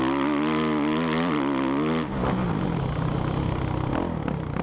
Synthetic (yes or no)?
no